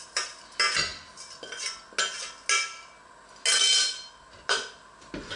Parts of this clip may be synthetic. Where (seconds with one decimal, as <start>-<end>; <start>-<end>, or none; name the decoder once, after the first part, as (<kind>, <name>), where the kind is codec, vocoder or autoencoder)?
none

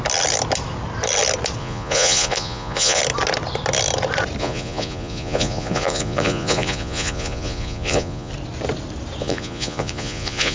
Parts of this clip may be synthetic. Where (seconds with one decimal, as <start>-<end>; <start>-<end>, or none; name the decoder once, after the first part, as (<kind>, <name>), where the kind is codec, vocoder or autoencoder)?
1.6-3.0 (vocoder, Vocos); 4.4-8.3; 9.2-10.5